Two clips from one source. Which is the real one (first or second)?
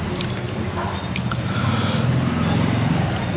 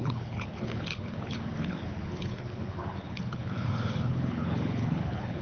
first